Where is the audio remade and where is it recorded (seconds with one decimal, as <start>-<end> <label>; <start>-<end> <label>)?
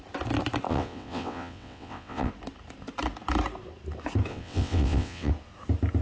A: 0.0-0.7 recorded; 0.7-2.3 remade; 2.3-4.3 recorded; 4.3-5.3 remade; 5.3-6.0 recorded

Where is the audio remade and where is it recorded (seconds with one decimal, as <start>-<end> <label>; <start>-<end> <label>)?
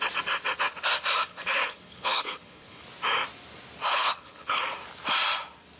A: 0.0-1.3 recorded; 1.3-2.8 remade; 2.8-3.9 recorded; 3.9-4.6 remade; 4.6-5.8 recorded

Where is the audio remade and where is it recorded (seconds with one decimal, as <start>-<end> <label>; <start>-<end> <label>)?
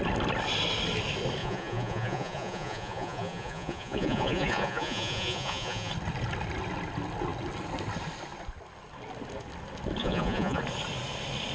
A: 0.0-1.4 recorded; 1.4-5.9 remade; 5.9-10.0 recorded; 10.0-10.6 remade; 10.6-11.5 recorded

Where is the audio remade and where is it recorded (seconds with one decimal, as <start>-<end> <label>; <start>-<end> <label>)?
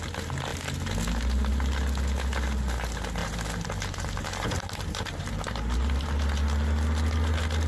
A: 0.0-3.2 recorded; 3.2-6.2 remade; 6.2-7.7 recorded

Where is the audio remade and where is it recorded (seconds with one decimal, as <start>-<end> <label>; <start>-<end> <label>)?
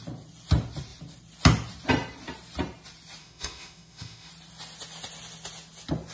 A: 0.0-3.2 recorded; 3.2-4.3 remade; 4.3-6.1 recorded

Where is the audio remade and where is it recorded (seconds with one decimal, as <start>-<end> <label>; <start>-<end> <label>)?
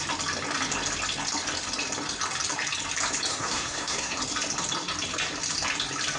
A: 0.0-3.3 recorded; 3.3-4.2 remade; 4.2-6.2 recorded